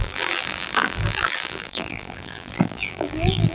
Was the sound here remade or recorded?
remade